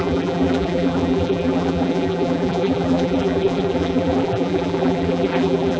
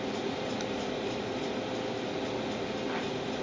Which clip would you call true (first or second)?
second